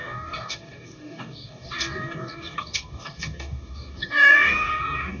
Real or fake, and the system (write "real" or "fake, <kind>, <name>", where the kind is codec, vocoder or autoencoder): fake, codec, DAC